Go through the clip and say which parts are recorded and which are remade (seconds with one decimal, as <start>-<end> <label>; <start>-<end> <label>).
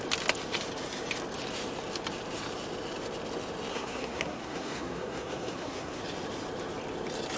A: 0.0-3.7 recorded; 3.7-6.0 remade; 6.0-7.4 recorded